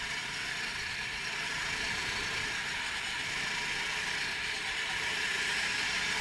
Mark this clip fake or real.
real